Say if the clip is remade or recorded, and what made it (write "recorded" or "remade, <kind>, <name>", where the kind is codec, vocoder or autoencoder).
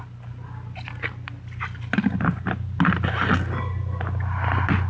recorded